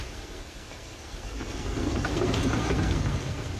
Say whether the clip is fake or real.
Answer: fake